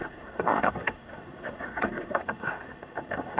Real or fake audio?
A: fake